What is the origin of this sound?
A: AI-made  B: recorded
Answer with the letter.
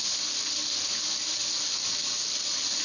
B